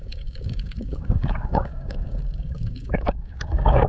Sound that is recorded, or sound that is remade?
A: remade